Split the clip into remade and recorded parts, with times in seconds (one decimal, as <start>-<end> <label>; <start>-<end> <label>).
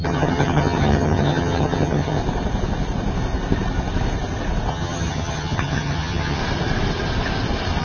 0.0-2.2 remade; 2.2-4.7 recorded; 4.7-6.4 remade; 6.4-7.8 recorded